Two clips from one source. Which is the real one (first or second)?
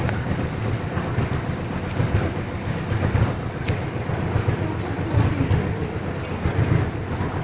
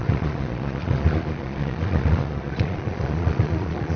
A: first